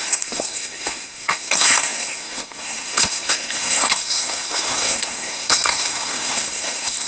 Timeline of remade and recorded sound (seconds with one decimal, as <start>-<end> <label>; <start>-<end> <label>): 0.0-7.1 remade